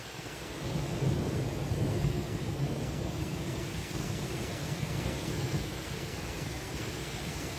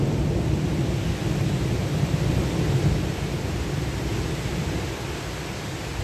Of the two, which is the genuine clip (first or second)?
second